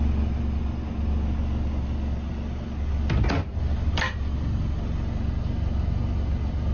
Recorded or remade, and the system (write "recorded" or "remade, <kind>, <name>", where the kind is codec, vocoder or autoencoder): recorded